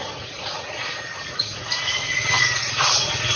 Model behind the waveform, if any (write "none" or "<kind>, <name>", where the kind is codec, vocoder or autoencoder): vocoder, Vocos